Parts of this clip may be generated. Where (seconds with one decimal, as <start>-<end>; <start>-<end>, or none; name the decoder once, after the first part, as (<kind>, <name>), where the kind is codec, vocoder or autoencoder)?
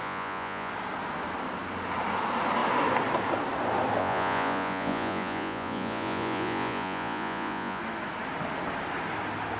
0.0-0.7 (vocoder, Vocos); 4.0-7.8